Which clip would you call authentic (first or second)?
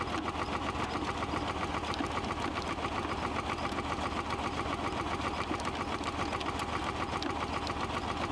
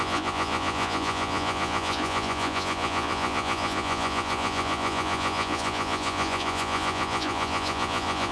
first